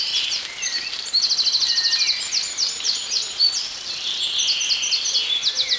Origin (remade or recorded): recorded